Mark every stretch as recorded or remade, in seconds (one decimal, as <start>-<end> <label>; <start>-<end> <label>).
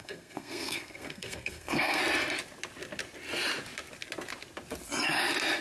0.0-2.0 remade; 2.0-5.6 recorded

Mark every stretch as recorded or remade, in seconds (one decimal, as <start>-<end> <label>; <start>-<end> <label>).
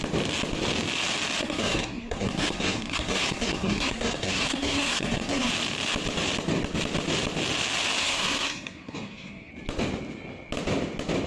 0.0-1.4 recorded; 1.4-5.5 remade; 5.5-8.0 recorded; 8.0-9.5 remade; 9.5-11.3 recorded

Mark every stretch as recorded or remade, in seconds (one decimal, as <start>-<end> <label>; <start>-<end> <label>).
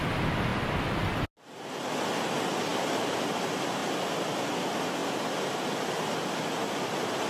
0.0-7.3 recorded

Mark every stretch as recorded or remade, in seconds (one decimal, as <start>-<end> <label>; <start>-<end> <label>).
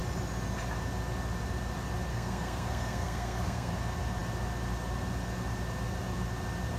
0.0-2.1 recorded; 2.1-3.7 remade; 3.7-6.8 recorded